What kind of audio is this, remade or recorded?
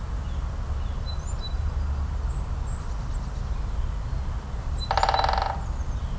recorded